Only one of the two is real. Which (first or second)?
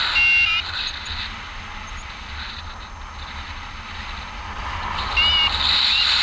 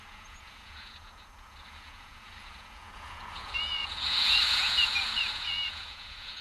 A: first